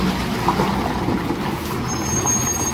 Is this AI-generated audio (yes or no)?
no